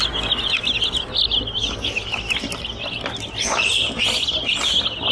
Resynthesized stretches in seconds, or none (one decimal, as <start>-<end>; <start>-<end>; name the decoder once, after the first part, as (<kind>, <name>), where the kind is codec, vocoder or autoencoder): none